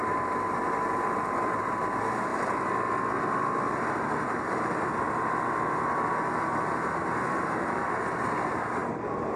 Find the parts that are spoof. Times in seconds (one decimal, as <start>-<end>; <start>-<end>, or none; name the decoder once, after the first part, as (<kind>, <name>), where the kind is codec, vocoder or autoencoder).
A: 0.0-2.3 (vocoder, BigVGAN v2); 3.7-9.4